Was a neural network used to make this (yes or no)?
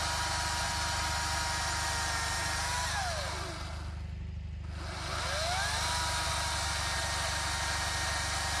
no